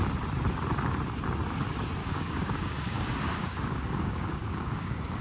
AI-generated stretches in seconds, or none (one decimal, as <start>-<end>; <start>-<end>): 2.0-5.2